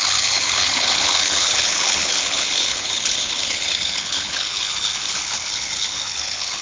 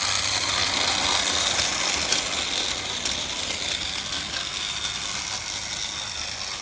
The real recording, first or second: second